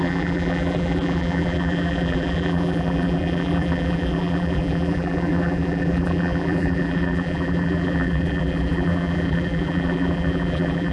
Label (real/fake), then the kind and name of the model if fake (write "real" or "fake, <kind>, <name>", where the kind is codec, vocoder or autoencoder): fake, vocoder, BigVGAN v2